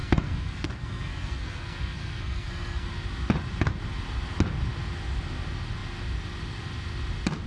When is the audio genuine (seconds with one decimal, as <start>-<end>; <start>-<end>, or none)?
2.9-7.5

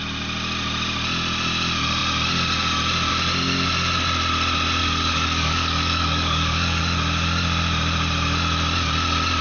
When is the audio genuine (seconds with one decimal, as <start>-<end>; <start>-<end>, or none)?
0.0-4.8; 6.8-9.4

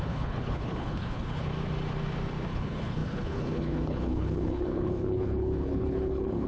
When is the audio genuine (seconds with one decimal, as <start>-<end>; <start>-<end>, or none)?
1.5-2.5

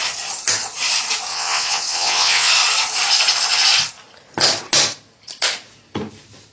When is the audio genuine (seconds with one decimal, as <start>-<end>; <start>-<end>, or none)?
0.0-1.3; 2.5-6.5

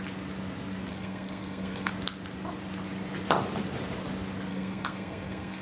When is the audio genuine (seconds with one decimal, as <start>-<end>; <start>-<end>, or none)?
0.0-0.9; 1.9-4.5